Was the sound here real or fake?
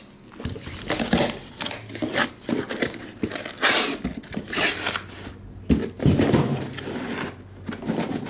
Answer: real